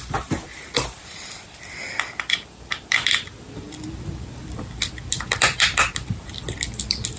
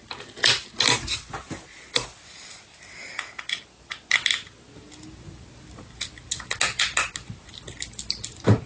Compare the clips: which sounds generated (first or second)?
first